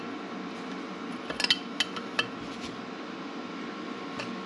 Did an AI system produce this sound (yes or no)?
no